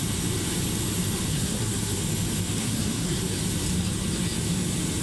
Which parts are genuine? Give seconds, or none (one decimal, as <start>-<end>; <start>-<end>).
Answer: 0.0-1.3; 2.0-2.6; 3.2-5.0